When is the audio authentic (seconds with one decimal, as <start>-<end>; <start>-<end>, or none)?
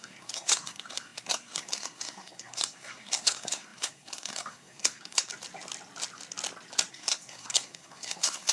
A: 5.3-6.9